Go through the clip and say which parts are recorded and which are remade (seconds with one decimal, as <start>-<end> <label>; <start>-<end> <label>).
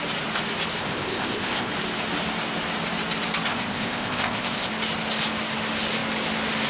0.0-0.8 recorded; 0.8-1.7 remade; 1.7-3.5 recorded; 3.5-4.7 remade; 4.7-6.7 recorded